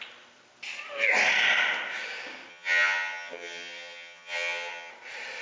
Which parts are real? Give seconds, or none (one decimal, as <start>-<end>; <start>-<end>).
0.0-2.5; 4.9-5.4